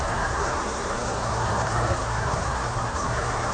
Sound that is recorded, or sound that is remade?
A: remade